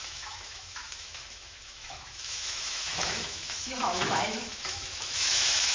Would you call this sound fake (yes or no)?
yes